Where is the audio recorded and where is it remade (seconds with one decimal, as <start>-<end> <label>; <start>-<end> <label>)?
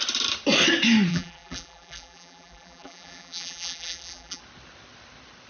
0.0-1.1 recorded; 1.1-4.4 remade; 4.4-5.5 recorded